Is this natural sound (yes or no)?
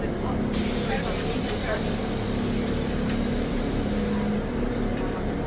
yes